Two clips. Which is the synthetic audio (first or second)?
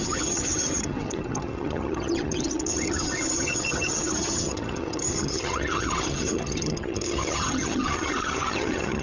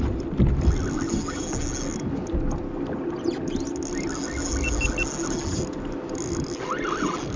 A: first